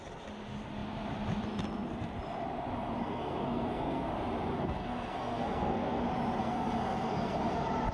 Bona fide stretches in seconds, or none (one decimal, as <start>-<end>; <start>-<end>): 0.0-3.0; 4.1-4.5; 6.0-6.4; 7.5-7.9